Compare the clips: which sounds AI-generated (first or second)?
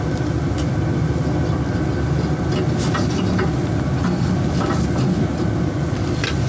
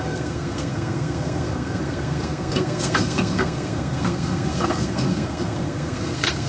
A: second